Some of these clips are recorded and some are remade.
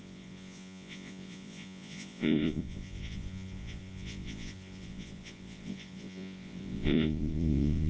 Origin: remade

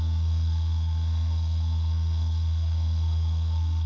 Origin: remade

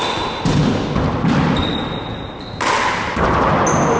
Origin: recorded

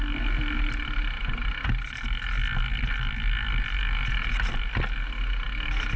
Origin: recorded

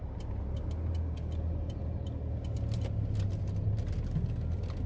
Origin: recorded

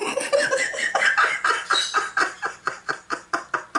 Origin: recorded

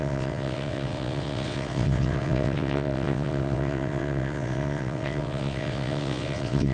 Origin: remade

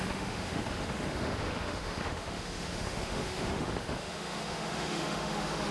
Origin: remade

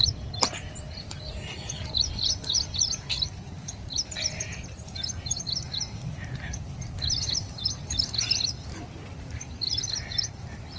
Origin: remade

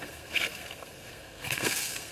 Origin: remade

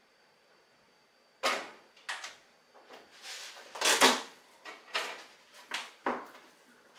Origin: recorded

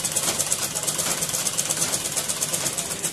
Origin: recorded